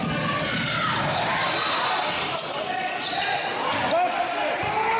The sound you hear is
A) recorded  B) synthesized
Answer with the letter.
A